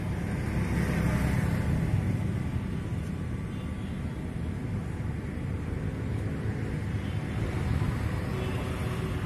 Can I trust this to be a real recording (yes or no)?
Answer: yes